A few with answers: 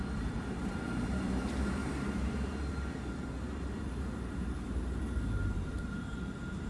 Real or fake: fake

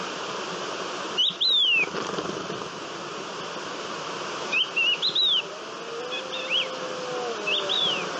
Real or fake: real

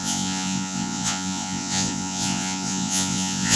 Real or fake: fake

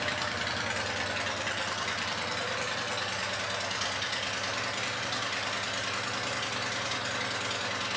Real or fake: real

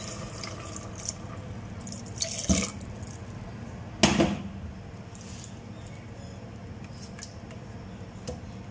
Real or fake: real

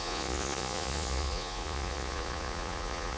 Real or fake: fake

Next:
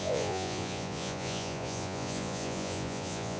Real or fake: fake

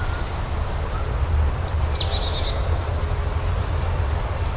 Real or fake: real